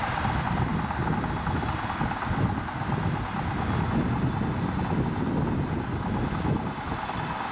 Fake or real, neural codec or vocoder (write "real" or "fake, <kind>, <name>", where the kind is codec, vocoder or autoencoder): real